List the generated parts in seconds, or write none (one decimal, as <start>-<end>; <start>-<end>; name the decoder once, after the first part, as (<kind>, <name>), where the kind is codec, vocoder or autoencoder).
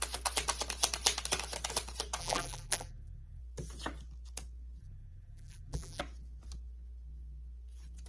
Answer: 2.2-3.4 (vocoder, BigVGAN v2); 4.8-6.0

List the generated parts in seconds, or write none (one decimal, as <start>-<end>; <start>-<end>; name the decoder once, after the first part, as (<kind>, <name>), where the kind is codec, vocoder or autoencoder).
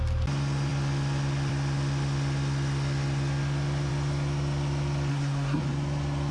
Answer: 5.1-5.6 (codec, SNAC)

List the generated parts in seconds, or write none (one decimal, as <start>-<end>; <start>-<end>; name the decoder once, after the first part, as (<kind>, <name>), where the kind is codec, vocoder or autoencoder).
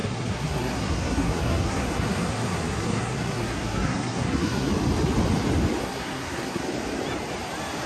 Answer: 0.0-4.7 (codec, SNAC); 5.8-6.6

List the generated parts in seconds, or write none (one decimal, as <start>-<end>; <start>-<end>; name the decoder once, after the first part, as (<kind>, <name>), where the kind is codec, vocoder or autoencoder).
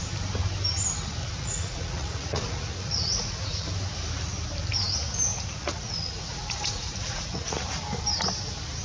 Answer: 1.2-3.7 (vocoder, Vocos); 5.3-7.8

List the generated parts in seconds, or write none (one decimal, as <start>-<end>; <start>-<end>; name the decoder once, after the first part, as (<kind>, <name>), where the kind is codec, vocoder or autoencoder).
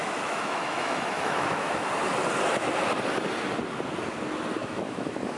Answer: 0.0-1.9 (autoencoder, DAC-VAE); 4.6-5.4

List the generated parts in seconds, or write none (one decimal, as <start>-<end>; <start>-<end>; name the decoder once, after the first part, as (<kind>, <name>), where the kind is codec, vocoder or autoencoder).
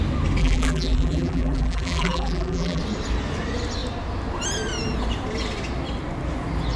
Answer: 0.4-2.8 (vocoder, BigVGAN v2)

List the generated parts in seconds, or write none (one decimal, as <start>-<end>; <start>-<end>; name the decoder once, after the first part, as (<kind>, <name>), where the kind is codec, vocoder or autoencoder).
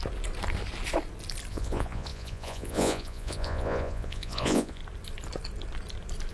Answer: 1.5-4.8 (vocoder, Vocos)